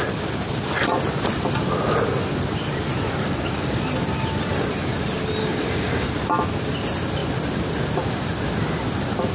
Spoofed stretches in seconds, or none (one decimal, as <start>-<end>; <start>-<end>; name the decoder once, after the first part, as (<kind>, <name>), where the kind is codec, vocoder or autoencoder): 3.2-3.8 (codec, DAC); 5.4-6.1